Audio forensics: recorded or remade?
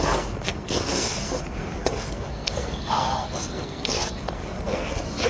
remade